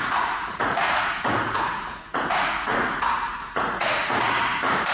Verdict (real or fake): fake